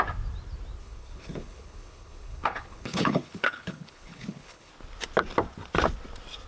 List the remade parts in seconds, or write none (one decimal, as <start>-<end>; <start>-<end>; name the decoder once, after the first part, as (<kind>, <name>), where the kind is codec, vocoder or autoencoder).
0.8-4.7 (codec, HILCodec)